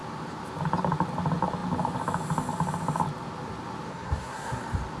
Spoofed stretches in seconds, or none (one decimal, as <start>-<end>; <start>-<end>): 3.9-4.6